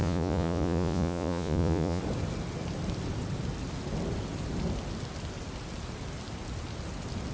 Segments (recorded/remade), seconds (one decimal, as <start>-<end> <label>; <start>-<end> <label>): 0.0-2.0 remade; 2.0-7.3 recorded